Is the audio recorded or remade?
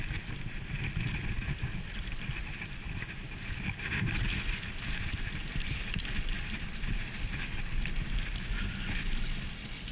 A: recorded